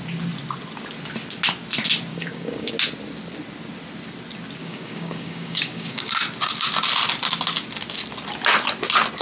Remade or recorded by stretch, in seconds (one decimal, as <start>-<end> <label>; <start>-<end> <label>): 0.0-2.1 recorded; 2.1-2.7 remade; 2.7-4.6 recorded; 4.6-6.1 remade; 6.1-9.2 recorded